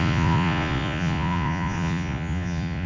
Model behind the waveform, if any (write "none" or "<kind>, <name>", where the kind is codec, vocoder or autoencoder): vocoder, Vocos